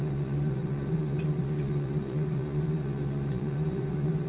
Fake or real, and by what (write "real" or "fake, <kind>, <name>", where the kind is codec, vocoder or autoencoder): fake, vocoder, Vocos